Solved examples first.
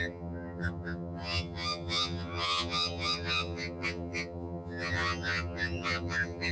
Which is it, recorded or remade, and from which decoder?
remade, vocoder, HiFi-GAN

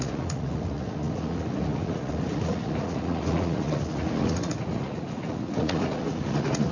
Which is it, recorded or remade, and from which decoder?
remade, vocoder, Vocos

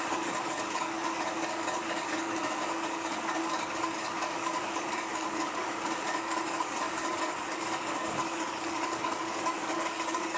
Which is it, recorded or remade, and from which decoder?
remade, codec, DAC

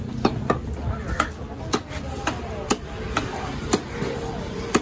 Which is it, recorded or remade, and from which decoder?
recorded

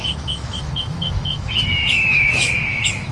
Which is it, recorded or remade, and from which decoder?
remade, autoencoder, DAC-VAE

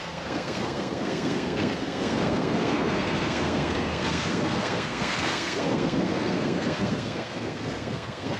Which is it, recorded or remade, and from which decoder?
remade, codec, SNAC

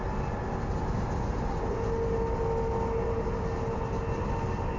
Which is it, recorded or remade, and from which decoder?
recorded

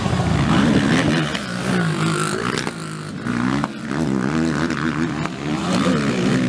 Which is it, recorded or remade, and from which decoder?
recorded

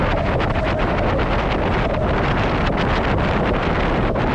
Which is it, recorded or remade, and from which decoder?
recorded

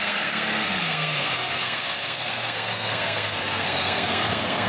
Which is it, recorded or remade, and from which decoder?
remade, codec, SNAC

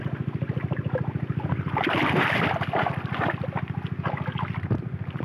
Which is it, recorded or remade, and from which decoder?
recorded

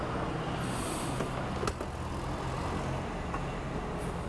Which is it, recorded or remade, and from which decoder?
recorded